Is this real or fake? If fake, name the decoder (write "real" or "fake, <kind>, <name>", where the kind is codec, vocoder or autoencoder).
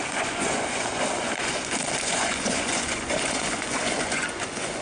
fake, vocoder, Vocos